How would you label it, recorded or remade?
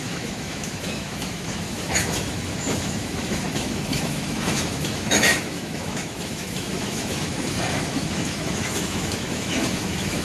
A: remade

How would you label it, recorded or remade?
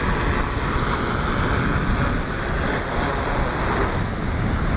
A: recorded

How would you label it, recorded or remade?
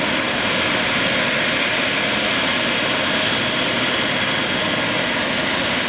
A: recorded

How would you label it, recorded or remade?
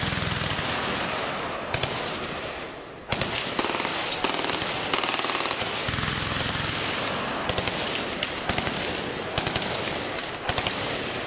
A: recorded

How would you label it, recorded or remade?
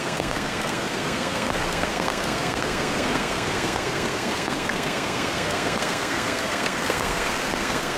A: remade